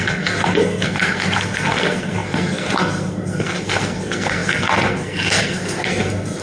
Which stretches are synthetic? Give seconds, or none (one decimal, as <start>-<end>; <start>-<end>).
0.0-6.4